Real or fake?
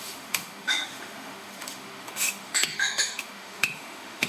fake